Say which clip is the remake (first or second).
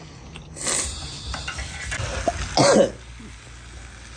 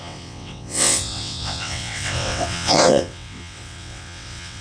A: second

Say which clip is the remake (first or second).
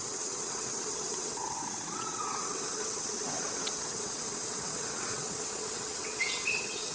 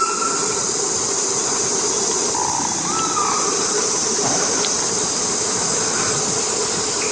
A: first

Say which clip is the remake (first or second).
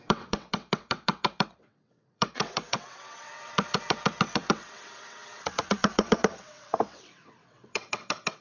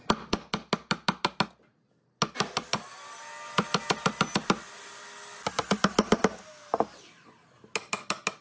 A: first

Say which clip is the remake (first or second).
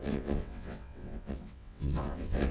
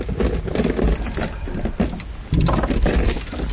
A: first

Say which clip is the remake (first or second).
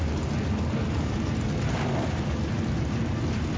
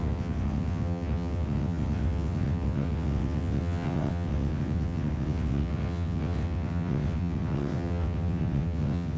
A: second